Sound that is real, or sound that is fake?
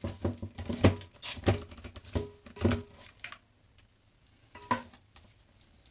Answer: real